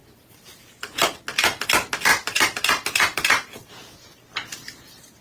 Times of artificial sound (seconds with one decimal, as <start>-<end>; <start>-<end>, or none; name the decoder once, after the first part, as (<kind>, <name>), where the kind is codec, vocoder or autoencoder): 0.0-1.6 (vocoder, BigVGAN v2); 2.1-3.7